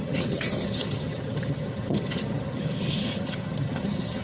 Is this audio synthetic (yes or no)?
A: yes